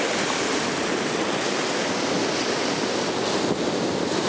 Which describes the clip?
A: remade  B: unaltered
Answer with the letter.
B